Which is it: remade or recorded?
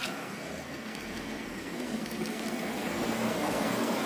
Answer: remade